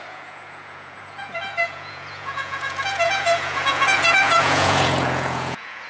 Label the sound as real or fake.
fake